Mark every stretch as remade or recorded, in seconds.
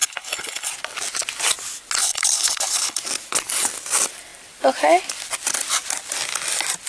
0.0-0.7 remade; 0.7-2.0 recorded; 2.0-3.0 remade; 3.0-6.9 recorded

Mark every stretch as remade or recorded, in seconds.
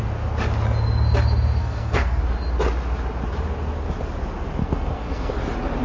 0.0-1.6 recorded; 1.6-2.2 remade; 2.2-4.6 recorded; 4.6-5.3 remade; 5.3-5.8 recorded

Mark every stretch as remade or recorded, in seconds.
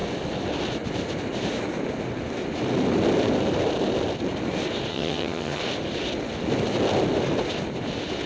0.0-4.9 recorded; 4.9-5.6 remade; 5.6-8.3 recorded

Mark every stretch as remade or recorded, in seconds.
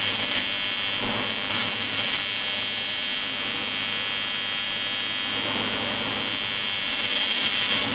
0.0-0.4 remade; 0.4-1.5 recorded; 1.5-2.2 remade; 2.2-6.9 recorded; 6.9-7.9 remade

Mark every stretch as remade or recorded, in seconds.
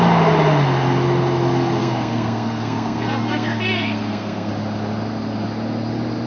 0.0-1.8 recorded; 1.8-4.5 remade; 4.5-6.3 recorded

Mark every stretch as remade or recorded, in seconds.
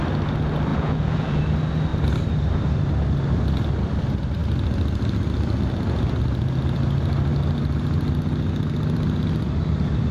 0.0-0.7 recorded; 0.7-1.4 remade; 1.4-10.1 recorded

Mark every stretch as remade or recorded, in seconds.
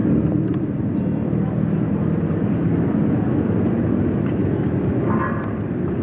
0.0-6.0 recorded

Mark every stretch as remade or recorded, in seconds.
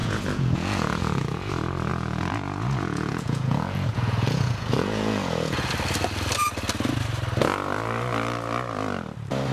0.0-1.5 remade; 1.5-1.9 recorded; 1.9-5.7 remade; 5.7-9.5 recorded